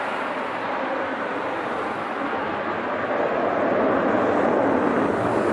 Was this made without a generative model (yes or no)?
yes